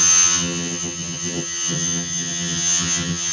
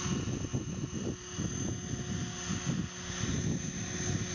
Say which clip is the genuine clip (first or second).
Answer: second